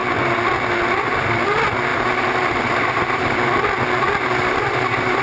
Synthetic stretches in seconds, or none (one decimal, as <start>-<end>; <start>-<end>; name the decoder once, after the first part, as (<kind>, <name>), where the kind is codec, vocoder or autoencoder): none